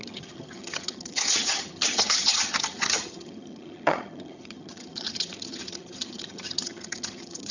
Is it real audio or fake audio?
fake